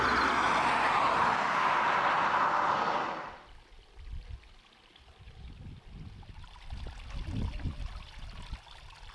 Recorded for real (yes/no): yes